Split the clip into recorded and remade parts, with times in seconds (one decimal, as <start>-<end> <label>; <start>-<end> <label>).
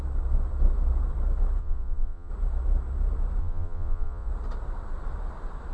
0.0-1.6 recorded; 1.6-2.3 remade; 2.3-3.4 recorded; 3.4-4.3 remade; 4.3-5.7 recorded